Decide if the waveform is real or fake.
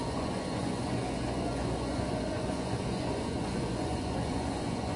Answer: fake